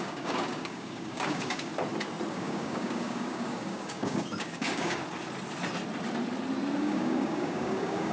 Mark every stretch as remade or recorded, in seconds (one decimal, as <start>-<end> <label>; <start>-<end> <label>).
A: 0.0-1.7 remade; 1.7-2.3 recorded; 2.3-5.0 remade; 5.0-6.8 recorded; 6.8-8.1 remade